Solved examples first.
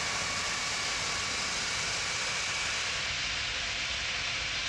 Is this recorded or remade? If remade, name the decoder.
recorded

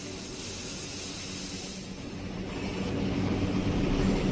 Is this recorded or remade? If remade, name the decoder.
recorded